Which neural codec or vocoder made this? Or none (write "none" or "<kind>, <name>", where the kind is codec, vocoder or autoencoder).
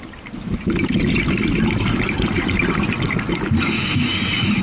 none